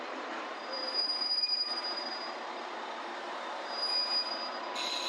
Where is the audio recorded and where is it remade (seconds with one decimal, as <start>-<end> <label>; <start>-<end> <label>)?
0.0-5.1 remade